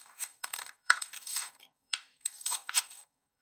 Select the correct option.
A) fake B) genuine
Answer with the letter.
A